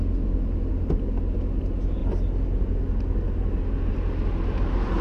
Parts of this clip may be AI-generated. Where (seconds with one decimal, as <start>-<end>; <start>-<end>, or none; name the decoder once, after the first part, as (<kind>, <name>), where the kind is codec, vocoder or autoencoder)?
none